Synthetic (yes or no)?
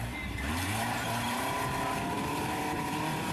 yes